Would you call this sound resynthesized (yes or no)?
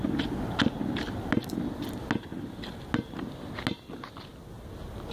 no